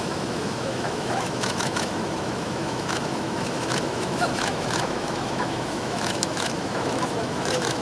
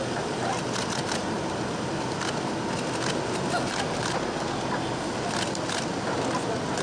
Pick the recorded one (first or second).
second